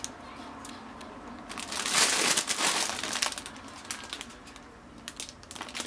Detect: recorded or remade recorded